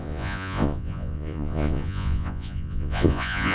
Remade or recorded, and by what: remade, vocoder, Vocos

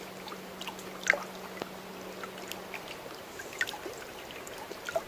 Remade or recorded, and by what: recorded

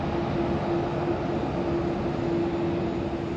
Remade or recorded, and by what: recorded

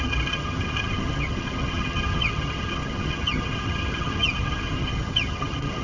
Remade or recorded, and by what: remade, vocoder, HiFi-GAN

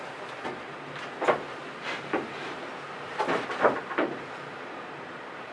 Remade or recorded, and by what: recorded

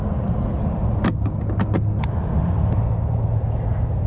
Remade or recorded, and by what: recorded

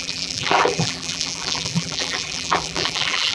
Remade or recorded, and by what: remade, vocoder, BigVGAN v2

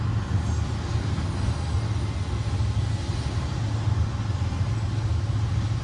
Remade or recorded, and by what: recorded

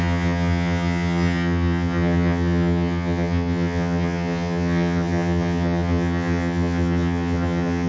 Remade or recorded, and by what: remade, vocoder, HiFi-GAN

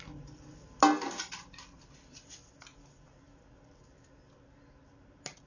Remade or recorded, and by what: recorded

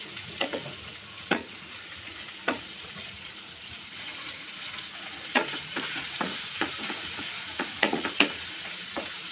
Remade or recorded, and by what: remade, vocoder, Vocos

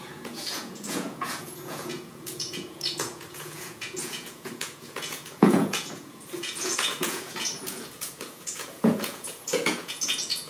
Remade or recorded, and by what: remade, vocoder, Vocos